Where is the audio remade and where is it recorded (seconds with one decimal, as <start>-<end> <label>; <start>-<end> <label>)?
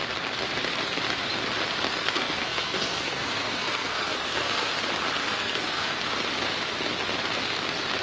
0.0-1.9 recorded; 1.9-4.7 remade; 4.7-5.2 recorded; 5.2-6.0 remade; 6.0-8.0 recorded